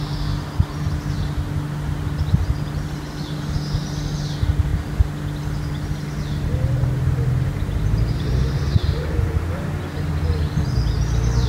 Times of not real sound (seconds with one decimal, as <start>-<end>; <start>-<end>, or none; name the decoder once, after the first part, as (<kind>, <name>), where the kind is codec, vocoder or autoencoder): none